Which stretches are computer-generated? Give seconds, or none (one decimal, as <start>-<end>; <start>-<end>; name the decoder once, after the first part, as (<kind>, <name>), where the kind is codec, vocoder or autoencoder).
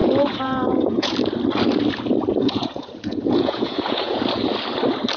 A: 0.0-1.1 (vocoder, Vocos); 2.3-4.2